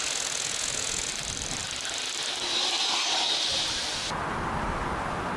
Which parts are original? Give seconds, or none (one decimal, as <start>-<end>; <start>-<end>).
1.1-5.4